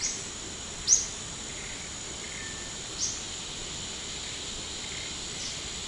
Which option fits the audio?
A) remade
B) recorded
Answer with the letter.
B